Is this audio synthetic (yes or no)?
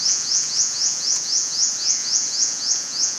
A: yes